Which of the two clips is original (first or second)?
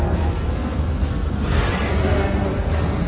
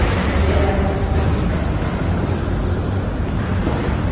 second